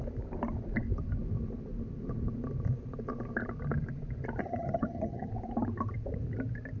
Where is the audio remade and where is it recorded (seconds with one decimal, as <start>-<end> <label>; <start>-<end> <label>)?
0.0-4.4 recorded; 4.4-5.3 remade; 5.3-6.8 recorded